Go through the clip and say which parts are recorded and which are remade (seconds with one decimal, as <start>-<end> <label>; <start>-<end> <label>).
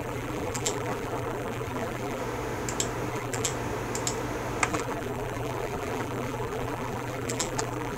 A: 0.0-2.2 remade; 2.2-3.1 recorded; 3.1-3.5 remade; 3.5-4.7 recorded; 4.7-8.0 remade